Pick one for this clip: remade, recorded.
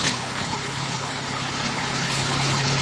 remade